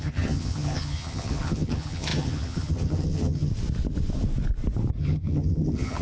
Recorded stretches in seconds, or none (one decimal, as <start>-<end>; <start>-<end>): 3.5-5.0